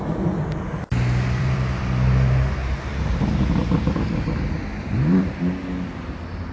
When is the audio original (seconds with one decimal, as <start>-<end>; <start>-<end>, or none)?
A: 0.0-1.4; 5.3-6.5